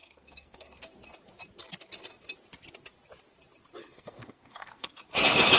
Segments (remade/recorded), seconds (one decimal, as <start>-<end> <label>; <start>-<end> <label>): 0.0-0.8 remade; 0.8-3.8 recorded; 3.8-5.0 remade; 5.0-5.6 recorded